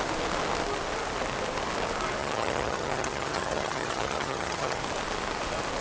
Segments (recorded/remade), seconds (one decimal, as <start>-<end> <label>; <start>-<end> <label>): 0.0-2.2 recorded; 2.2-4.8 remade; 4.8-5.8 recorded